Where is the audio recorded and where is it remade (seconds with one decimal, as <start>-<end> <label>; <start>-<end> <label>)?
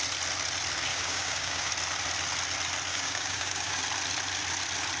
0.0-0.9 recorded; 0.9-1.7 remade; 1.7-2.9 recorded; 2.9-3.8 remade; 3.8-5.0 recorded